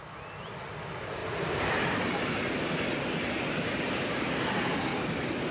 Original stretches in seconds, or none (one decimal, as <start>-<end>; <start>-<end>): 0.0-5.5